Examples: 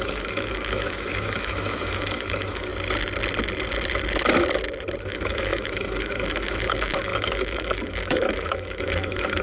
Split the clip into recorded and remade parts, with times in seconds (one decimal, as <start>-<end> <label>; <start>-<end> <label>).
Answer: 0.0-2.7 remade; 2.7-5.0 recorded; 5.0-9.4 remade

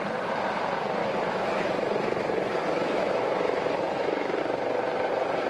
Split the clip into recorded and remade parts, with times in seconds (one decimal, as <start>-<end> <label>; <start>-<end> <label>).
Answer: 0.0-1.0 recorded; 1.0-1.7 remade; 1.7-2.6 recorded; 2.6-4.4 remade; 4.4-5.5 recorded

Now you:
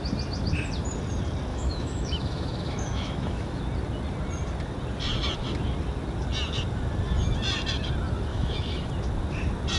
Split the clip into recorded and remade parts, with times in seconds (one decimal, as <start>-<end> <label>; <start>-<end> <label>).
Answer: 0.0-1.5 recorded; 1.5-3.6 remade; 3.6-8.3 recorded; 8.3-8.9 remade; 8.9-9.8 recorded

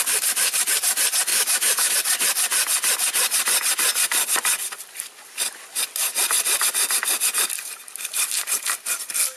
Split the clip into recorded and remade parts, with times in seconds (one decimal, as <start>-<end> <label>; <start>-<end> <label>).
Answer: 0.0-1.3 recorded; 1.3-1.9 remade; 1.9-9.4 recorded